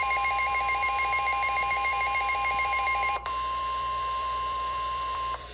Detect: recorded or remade remade